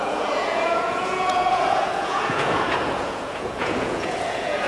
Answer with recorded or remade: remade